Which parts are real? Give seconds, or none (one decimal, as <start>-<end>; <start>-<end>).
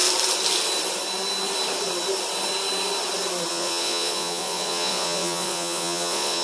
0.0-3.5